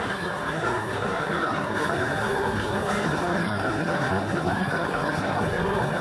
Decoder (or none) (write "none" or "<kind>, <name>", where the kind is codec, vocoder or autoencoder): codec, SNAC